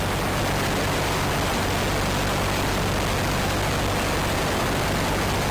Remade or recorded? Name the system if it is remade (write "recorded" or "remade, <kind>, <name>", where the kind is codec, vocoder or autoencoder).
recorded